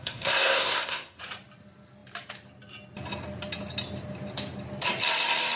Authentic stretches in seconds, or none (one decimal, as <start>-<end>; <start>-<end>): 1.2-5.6